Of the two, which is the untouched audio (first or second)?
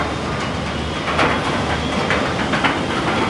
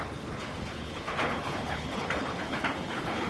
first